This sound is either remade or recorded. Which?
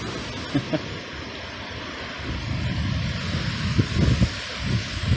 recorded